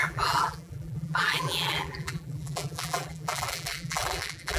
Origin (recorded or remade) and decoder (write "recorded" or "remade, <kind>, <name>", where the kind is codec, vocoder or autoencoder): remade, vocoder, BigVGAN v2